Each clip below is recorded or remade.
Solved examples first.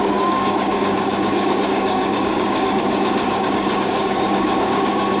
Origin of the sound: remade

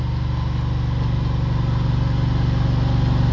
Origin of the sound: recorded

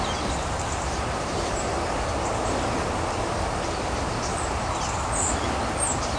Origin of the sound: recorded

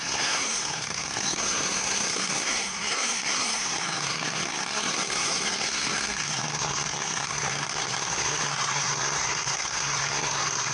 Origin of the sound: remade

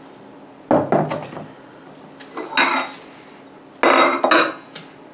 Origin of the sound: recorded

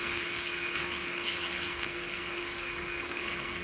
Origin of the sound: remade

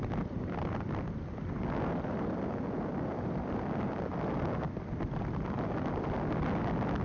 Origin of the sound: recorded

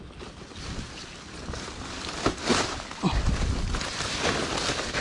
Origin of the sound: recorded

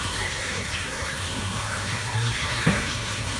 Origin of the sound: remade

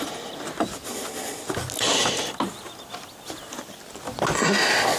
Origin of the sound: recorded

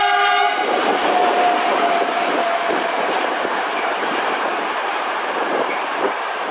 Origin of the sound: remade